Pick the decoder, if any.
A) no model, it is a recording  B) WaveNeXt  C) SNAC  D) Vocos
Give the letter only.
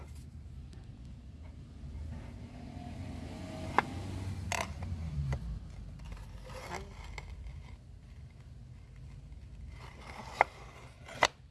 A